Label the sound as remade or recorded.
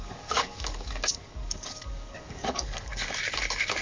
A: remade